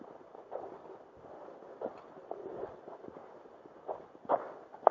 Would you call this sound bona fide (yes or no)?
yes